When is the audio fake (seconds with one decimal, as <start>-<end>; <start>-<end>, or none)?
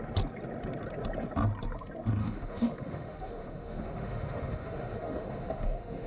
2.2-6.1